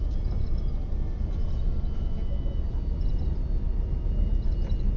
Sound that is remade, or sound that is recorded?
recorded